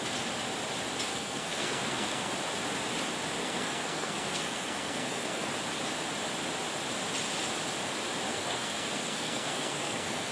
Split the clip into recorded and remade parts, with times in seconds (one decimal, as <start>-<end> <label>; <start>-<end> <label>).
0.0-1.1 recorded; 1.1-2.3 remade; 2.3-3.4 recorded; 3.4-5.5 remade; 5.5-8.3 recorded; 8.3-10.3 remade